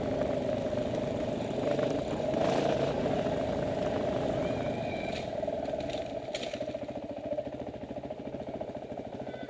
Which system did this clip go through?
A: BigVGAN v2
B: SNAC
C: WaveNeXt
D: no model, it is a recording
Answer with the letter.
D